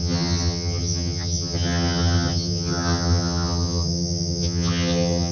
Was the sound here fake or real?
fake